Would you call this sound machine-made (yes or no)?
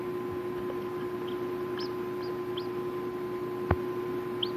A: no